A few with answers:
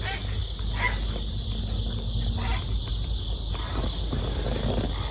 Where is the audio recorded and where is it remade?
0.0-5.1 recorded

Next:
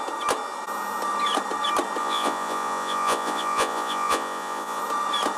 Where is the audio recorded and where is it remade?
0.0-2.0 recorded; 2.0-4.8 remade; 4.8-5.4 recorded

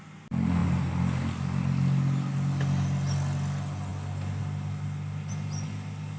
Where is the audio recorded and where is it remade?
0.0-6.2 recorded